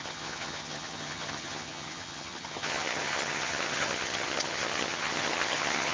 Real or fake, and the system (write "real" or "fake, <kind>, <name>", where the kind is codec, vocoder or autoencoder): fake, vocoder, HiFi-GAN